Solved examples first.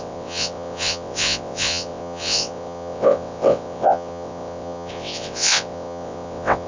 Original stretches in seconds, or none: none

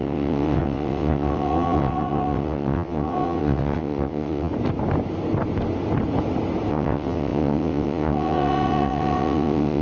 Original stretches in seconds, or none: 4.5-6.7

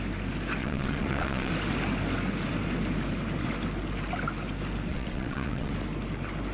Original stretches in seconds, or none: 0.0-0.6; 1.5-4.9; 5.7-6.5

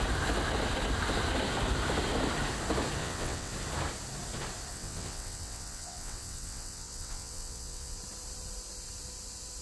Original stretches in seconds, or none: 0.0-3.0; 3.5-4.7; 8.0-9.6

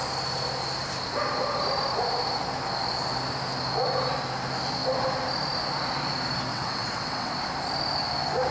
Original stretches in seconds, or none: 0.0-6.5; 7.3-8.5

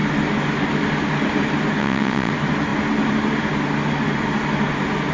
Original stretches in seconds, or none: 0.0-1.8; 2.3-5.1